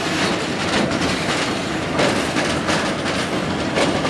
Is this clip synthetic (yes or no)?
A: yes